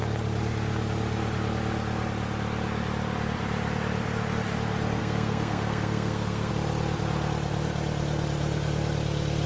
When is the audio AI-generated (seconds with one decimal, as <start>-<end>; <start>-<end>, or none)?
5.0-6.5